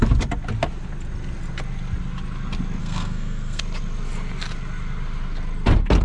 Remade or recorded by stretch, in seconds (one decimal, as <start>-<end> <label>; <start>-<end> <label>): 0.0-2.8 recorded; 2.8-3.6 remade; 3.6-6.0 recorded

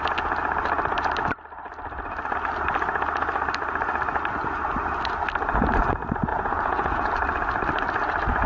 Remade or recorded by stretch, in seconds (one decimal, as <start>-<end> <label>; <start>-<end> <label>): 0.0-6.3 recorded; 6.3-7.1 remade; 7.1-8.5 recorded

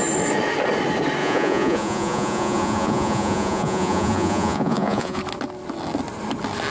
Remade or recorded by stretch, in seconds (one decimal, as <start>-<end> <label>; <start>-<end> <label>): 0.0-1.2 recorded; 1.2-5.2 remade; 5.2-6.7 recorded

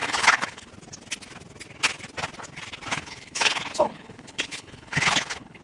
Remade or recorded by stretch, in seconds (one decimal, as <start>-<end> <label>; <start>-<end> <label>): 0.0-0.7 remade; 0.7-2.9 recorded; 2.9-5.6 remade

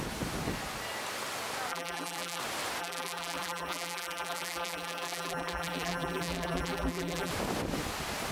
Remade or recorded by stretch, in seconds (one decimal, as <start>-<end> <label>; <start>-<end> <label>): 0.0-1.7 recorded; 1.7-2.4 remade; 2.4-2.8 recorded; 2.8-7.3 remade; 7.3-8.3 recorded

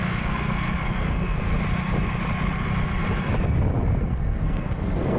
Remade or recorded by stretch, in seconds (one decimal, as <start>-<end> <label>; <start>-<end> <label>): 0.0-1.4 remade; 1.4-4.0 recorded; 4.0-5.2 remade

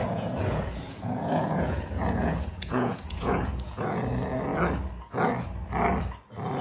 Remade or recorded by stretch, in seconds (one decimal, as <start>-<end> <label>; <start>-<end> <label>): 0.0-4.0 remade; 4.0-6.6 recorded